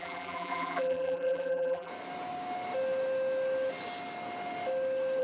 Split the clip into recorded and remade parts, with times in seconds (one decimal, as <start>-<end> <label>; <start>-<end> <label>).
0.0-1.9 remade; 1.9-5.2 recorded